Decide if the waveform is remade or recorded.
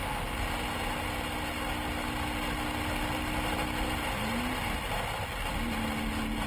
recorded